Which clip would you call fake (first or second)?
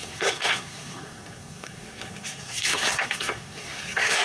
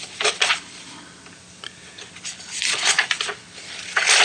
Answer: first